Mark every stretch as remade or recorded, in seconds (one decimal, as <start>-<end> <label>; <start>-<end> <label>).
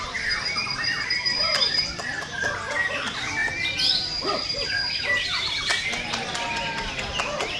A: 0.0-7.6 recorded